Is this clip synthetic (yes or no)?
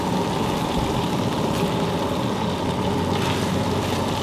no